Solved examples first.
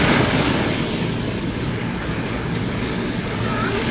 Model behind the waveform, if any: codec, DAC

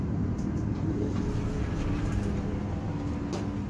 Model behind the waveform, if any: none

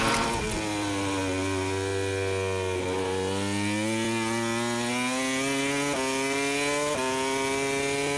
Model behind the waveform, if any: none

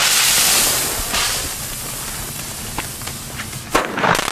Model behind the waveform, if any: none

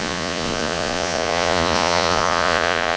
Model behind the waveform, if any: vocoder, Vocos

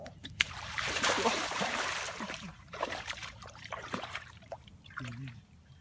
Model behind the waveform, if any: vocoder, BigVGAN v2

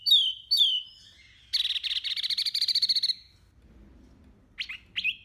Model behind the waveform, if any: none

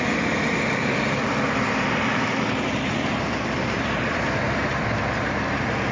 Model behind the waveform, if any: vocoder, BigVGAN v2